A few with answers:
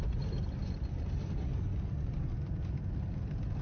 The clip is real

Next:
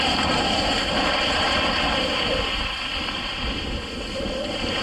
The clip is real